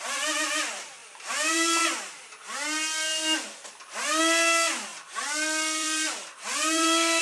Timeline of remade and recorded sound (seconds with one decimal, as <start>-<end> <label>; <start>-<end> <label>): 0.0-1.0 recorded; 1.0-2.1 remade; 2.1-4.9 recorded; 4.9-7.2 remade